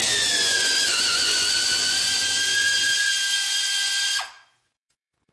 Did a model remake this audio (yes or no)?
yes